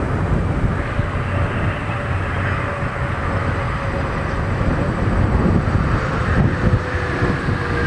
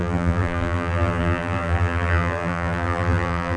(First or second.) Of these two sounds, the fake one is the second